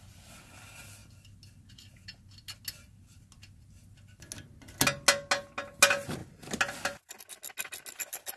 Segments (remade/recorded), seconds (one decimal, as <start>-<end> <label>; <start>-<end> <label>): 0.0-8.4 recorded